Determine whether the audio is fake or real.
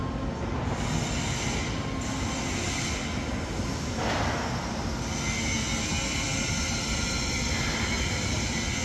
real